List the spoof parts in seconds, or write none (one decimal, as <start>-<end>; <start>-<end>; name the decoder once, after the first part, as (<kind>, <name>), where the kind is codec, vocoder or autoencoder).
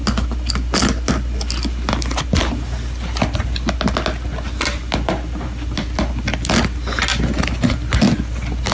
none